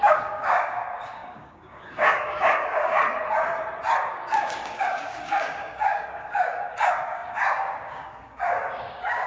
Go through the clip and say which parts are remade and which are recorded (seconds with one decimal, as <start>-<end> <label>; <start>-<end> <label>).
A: 0.0-3.0 remade; 3.0-4.1 recorded; 4.1-9.3 remade